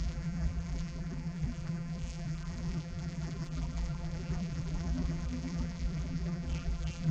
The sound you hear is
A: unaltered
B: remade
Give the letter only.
B